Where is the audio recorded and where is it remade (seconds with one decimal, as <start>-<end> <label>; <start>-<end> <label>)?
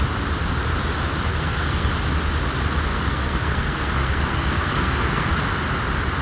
0.0-1.3 recorded; 1.3-1.9 remade; 1.9-2.9 recorded; 2.9-5.3 remade; 5.3-6.2 recorded